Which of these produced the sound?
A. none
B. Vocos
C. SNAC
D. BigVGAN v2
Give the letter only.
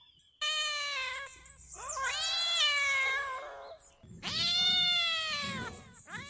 A